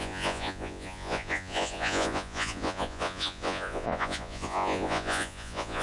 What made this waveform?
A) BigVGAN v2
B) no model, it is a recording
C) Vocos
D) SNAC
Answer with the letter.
C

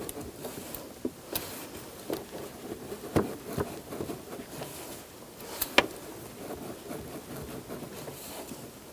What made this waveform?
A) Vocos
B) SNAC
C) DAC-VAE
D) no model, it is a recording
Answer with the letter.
D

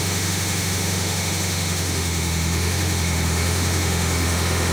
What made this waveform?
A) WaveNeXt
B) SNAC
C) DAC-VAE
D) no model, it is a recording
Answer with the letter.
C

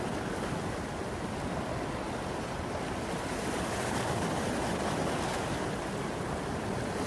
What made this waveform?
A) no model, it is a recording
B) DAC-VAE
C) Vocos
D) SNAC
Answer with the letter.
A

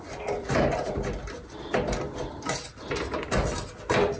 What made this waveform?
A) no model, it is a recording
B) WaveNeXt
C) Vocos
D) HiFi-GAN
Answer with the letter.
A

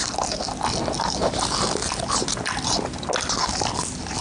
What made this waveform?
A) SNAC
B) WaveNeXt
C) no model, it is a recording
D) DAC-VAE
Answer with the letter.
C